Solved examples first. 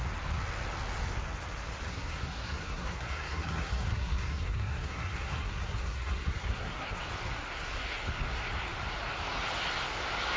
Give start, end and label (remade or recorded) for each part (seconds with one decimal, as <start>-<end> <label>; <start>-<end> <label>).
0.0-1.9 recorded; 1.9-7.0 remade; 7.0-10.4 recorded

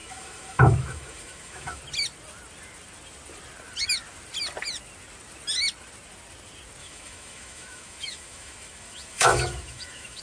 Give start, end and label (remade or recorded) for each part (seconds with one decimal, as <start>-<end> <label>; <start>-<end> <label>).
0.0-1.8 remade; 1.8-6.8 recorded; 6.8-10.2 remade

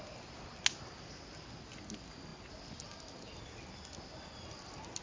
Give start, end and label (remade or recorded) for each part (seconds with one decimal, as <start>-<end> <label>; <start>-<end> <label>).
0.0-5.0 recorded